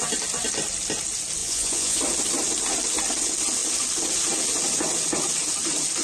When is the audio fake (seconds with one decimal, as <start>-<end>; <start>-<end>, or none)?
1.4-2.0